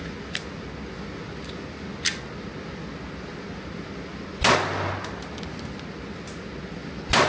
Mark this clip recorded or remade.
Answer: recorded